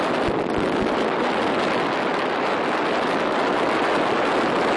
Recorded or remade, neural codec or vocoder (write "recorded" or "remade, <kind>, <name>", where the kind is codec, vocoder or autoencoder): recorded